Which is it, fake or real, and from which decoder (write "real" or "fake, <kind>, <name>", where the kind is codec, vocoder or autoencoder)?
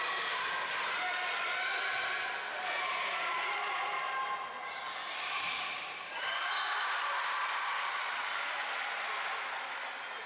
real